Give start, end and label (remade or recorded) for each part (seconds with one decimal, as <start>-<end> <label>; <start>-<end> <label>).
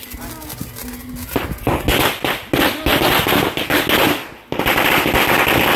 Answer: 0.0-5.8 recorded